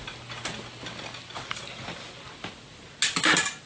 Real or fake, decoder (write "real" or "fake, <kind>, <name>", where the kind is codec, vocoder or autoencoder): real